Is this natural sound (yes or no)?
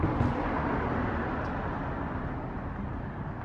yes